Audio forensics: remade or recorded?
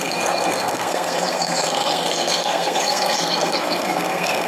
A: remade